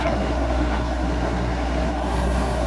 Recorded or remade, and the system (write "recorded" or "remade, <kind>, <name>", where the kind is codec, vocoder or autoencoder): remade, codec, SNAC